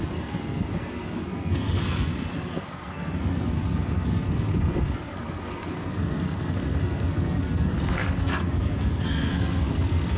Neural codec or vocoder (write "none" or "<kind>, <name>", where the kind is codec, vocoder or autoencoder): codec, SNAC